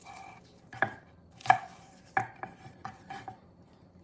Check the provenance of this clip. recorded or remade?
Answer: remade